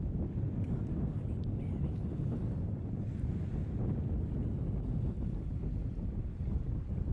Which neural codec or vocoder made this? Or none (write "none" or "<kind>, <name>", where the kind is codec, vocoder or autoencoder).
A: none